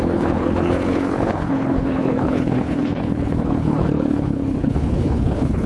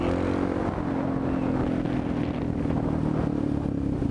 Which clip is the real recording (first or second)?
second